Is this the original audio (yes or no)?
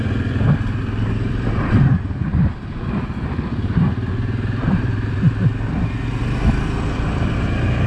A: no